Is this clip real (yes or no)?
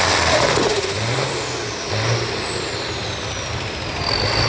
yes